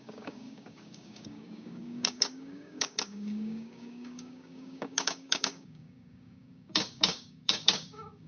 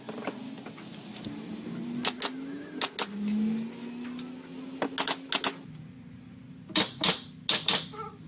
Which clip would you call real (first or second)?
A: second